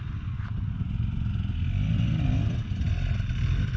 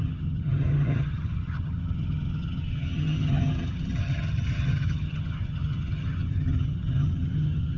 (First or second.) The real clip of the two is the first